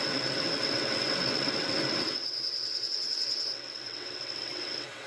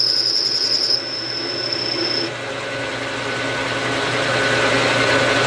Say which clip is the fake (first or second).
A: first